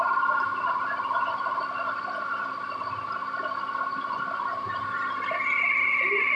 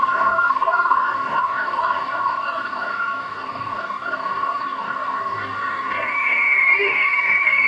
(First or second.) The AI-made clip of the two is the second